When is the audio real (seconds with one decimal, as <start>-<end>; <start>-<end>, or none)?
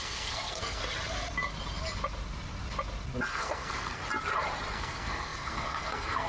0.8-3.3; 4.0-4.7